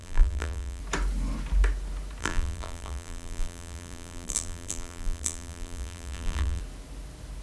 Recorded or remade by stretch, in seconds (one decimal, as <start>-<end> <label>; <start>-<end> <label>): 0.0-0.8 remade; 0.8-2.2 recorded; 2.2-6.6 remade; 6.6-7.4 recorded